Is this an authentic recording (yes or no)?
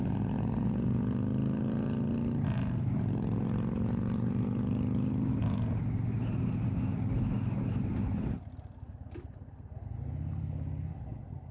yes